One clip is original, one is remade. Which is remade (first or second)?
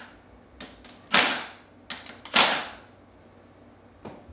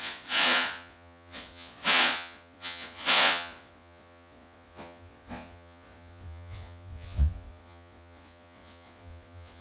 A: second